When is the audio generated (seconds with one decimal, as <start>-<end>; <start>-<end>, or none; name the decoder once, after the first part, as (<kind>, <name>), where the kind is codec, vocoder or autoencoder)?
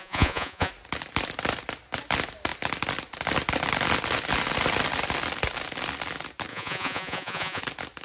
0.0-0.7 (vocoder, Vocos); 6.5-7.6